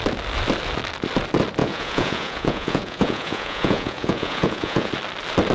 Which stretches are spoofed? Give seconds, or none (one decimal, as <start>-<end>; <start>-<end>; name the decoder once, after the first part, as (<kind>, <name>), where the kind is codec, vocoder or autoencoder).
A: 1.6-4.9 (vocoder, Vocos)